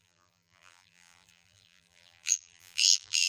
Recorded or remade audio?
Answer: remade